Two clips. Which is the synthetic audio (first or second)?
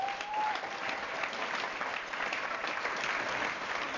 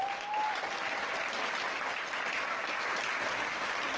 first